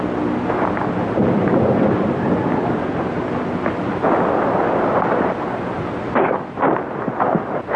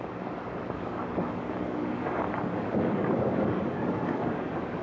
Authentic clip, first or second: first